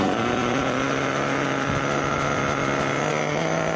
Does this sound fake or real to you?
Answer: real